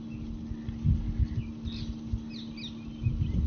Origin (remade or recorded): recorded